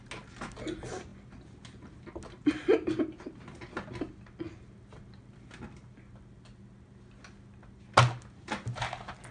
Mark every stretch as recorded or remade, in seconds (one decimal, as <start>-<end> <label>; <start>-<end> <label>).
0.0-9.3 recorded